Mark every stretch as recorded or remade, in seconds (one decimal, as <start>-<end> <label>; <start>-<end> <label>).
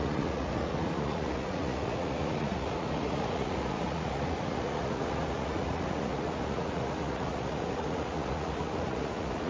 0.0-9.5 remade